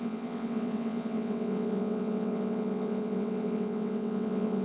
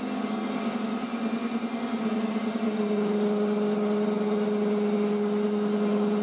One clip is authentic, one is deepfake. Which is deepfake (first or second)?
first